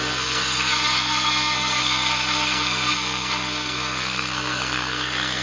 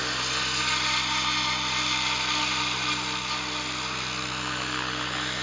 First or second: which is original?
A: second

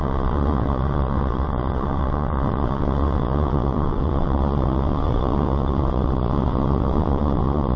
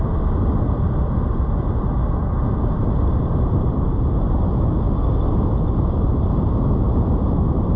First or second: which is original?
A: second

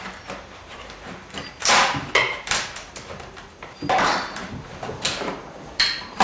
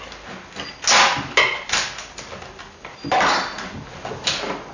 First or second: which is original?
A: second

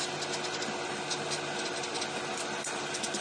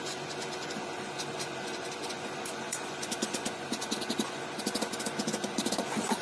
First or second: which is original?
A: first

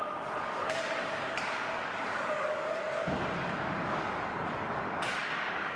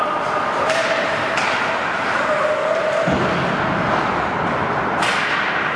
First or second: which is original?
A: second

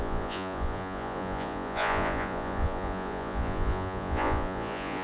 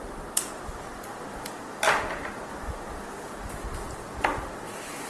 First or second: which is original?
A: second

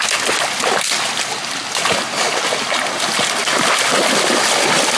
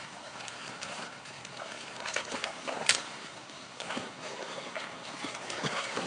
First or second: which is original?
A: first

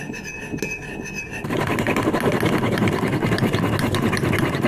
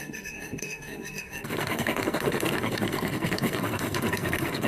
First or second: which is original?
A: first